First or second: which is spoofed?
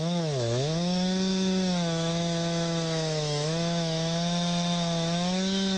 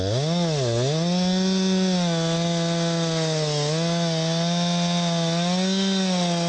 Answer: first